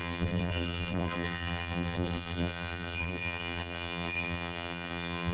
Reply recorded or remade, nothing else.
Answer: remade